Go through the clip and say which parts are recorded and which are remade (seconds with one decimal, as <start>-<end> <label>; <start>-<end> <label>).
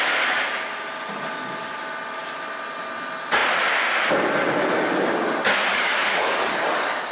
0.0-5.7 recorded; 5.7-7.1 remade